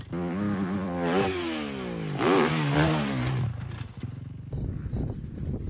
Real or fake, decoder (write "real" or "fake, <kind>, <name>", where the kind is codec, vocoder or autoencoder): real